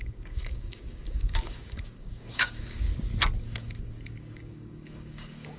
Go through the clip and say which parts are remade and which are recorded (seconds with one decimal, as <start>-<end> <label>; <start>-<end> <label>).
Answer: 0.0-2.9 remade; 2.9-3.4 recorded; 3.4-5.6 remade